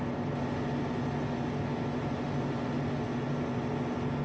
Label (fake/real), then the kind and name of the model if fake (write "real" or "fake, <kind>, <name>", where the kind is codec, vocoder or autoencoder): real